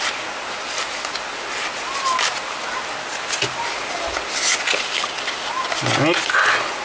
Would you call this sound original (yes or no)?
yes